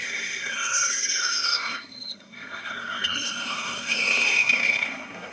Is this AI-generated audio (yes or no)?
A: yes